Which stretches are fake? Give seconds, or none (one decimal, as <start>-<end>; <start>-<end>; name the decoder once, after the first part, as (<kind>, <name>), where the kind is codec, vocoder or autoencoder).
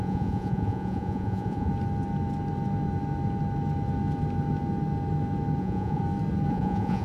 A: 0.0-1.7 (vocoder, Vocos); 5.6-6.0; 6.5-7.0